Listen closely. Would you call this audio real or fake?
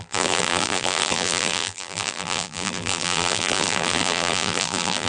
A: fake